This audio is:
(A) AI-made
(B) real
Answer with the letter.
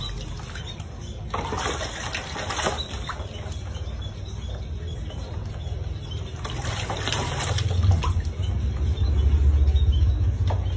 B